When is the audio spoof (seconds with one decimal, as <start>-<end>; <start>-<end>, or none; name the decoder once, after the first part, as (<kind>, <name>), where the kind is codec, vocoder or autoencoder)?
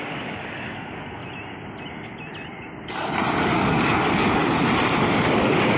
0.0-1.2 (codec, DAC); 3.4-4.4; 5.0-5.8